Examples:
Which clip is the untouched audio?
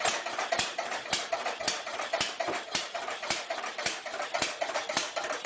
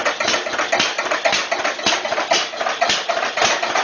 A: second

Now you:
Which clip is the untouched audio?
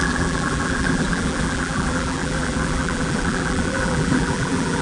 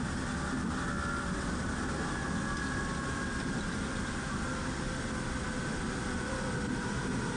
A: second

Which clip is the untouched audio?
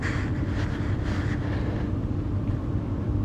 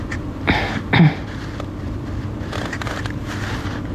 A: first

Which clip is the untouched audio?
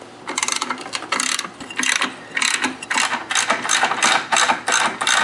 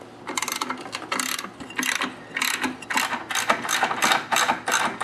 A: second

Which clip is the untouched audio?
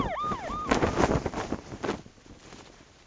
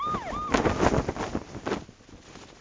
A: second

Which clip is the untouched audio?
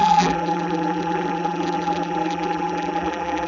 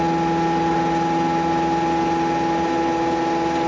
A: second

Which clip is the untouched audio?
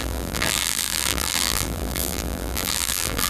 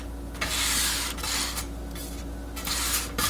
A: second